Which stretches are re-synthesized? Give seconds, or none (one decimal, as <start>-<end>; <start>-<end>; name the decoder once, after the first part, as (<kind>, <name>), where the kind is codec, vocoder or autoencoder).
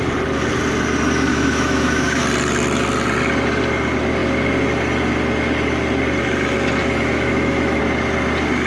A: 1.3-2.2 (autoencoder, DAC-VAE); 6.8-7.8